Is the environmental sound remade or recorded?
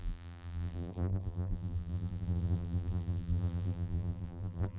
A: remade